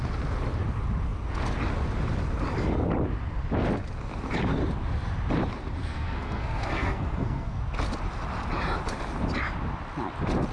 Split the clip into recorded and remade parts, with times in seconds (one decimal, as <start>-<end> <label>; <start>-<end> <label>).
0.0-5.8 recorded; 5.8-7.6 remade; 7.6-10.5 recorded